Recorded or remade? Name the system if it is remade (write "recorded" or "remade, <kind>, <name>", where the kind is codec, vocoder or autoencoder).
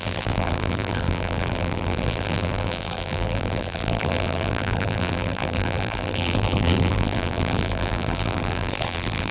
remade, vocoder, BigVGAN v2